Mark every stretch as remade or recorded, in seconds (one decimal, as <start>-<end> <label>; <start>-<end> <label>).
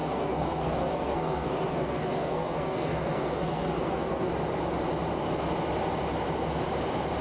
0.0-4.3 remade; 4.3-7.2 recorded